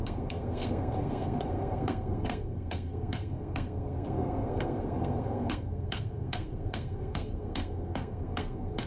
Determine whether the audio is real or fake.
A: fake